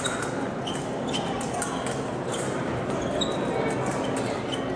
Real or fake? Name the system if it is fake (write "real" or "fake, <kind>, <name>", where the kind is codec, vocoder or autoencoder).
real